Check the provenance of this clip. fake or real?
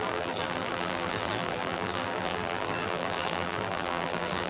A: fake